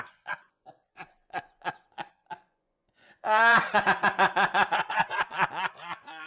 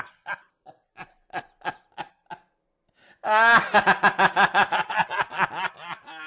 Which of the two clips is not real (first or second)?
first